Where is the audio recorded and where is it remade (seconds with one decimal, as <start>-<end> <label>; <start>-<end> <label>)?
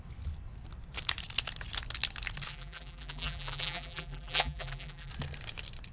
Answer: 0.0-2.5 recorded; 2.5-5.1 remade; 5.1-5.9 recorded